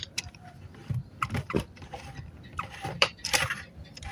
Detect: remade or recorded remade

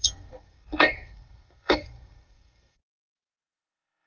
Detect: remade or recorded remade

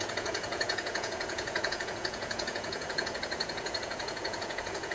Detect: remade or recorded remade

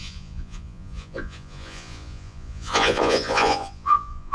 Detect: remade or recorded remade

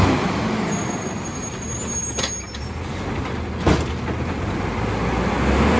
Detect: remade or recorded recorded